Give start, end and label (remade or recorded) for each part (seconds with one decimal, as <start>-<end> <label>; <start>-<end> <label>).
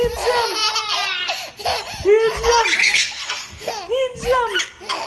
0.0-2.8 recorded; 2.8-3.7 remade; 3.7-5.1 recorded